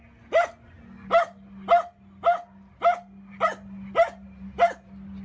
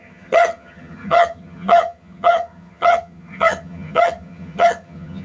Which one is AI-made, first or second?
second